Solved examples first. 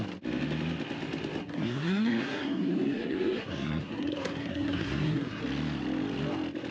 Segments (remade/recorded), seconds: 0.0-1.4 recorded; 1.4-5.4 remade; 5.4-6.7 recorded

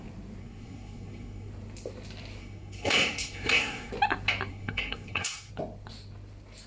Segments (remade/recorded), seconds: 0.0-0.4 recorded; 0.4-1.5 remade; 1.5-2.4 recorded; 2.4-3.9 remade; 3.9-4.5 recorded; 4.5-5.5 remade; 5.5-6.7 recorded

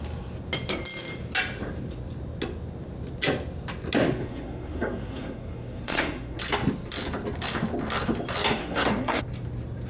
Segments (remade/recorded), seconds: 0.0-4.2 recorded; 4.2-6.4 remade; 6.4-8.6 recorded; 8.6-9.2 remade; 9.2-9.9 recorded